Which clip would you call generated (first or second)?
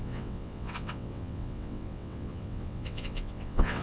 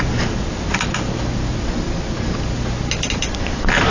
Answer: first